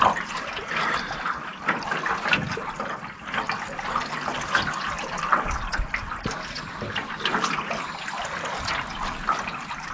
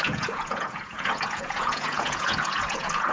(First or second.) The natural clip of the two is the first